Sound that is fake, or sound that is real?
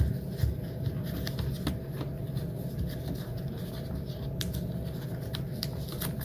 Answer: real